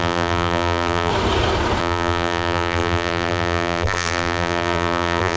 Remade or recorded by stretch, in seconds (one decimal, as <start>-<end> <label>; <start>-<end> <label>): 0.0-1.1 remade; 1.1-1.8 recorded; 1.8-5.4 remade